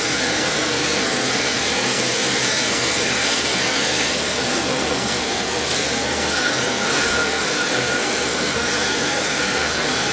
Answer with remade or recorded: remade